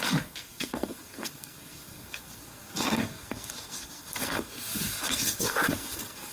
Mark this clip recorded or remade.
remade